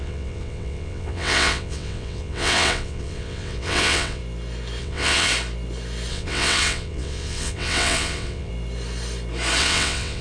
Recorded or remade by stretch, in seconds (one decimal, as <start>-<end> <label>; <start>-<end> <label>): 0.0-4.2 remade; 4.2-4.8 recorded; 4.8-5.3 remade; 5.3-6.1 recorded; 6.1-8.5 remade; 8.5-9.6 recorded; 9.6-10.2 remade